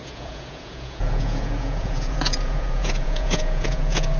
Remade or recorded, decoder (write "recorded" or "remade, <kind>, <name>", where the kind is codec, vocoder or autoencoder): remade, vocoder, Vocos